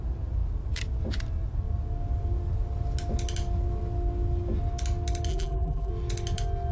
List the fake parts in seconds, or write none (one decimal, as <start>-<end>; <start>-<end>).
5.3-5.9